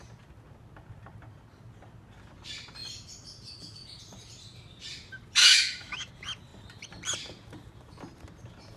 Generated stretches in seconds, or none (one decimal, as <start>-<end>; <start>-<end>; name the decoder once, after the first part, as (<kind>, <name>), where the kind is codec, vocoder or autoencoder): 5.4-6.1 (autoencoder, DAC-VAE)